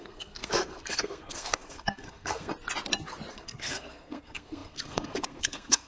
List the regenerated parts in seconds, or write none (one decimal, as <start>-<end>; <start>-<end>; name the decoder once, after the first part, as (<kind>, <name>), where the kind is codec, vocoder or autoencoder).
0.0-2.5 (codec, SNAC); 3.3-5.9